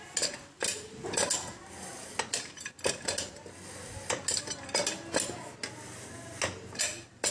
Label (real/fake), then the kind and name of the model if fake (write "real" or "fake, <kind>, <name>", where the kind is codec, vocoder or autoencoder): real